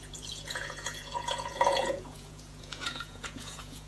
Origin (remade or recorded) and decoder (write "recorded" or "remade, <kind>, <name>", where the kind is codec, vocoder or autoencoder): remade, vocoder, Vocos